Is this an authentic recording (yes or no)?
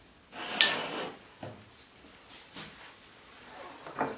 yes